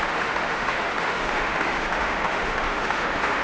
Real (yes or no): no